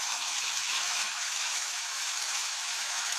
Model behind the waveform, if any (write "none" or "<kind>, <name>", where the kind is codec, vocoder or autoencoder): autoencoder, DAC-VAE